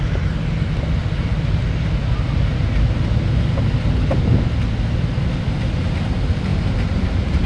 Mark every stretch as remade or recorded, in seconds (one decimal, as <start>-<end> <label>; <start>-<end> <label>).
0.0-6.5 recorded; 6.5-7.5 remade